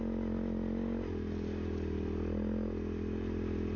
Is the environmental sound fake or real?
real